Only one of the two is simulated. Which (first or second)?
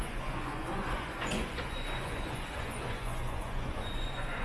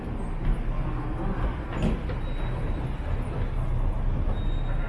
first